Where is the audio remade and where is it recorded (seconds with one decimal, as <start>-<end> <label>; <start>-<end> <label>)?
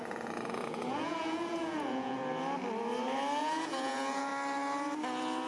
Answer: 0.0-2.2 remade; 2.2-3.4 recorded; 3.4-4.3 remade; 4.3-5.5 recorded